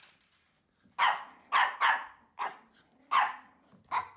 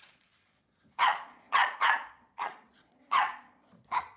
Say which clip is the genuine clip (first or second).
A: first